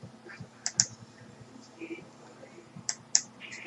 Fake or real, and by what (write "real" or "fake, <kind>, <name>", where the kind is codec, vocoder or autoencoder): real